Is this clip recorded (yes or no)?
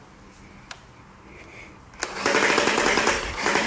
yes